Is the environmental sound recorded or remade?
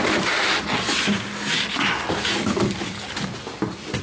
recorded